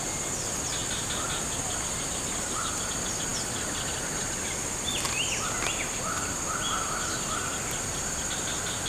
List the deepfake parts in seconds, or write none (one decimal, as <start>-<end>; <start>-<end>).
none